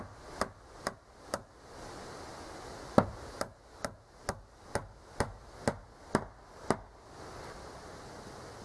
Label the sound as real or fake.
real